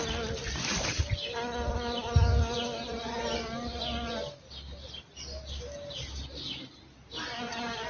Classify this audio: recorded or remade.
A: recorded